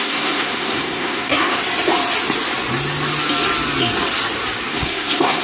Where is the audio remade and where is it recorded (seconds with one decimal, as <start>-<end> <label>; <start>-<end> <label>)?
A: 0.0-1.6 remade; 1.6-4.7 recorded; 4.7-5.4 remade